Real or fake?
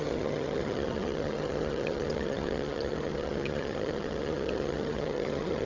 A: fake